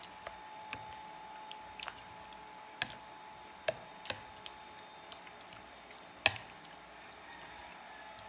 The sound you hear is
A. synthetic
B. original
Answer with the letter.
B